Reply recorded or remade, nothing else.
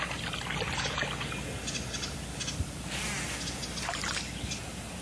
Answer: recorded